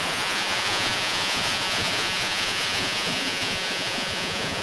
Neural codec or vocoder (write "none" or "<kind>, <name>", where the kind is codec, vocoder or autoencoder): vocoder, Vocos